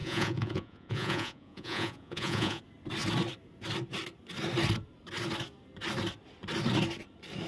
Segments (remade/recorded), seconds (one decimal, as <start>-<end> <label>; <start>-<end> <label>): 0.0-2.6 remade; 2.6-7.5 recorded